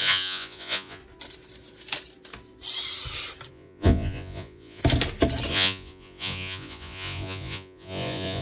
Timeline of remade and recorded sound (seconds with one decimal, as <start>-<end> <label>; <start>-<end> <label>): 0.0-1.0 remade; 1.0-3.5 recorded; 3.5-4.8 remade; 4.8-5.5 recorded; 5.5-8.4 remade